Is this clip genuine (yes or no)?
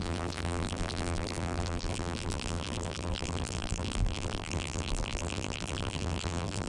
no